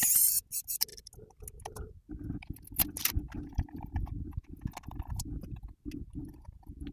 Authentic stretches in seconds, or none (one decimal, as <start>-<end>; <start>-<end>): 0.0-6.9